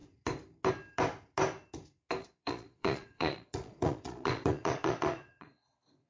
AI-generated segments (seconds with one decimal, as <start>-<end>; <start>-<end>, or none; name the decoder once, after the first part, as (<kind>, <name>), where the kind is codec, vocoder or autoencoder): 2.2-6.1 (vocoder, Vocos)